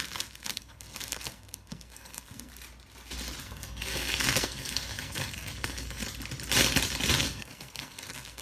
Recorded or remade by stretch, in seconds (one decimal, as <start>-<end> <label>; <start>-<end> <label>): 0.0-2.5 remade; 2.5-3.4 recorded; 3.4-6.0 remade; 6.0-7.2 recorded; 7.2-8.4 remade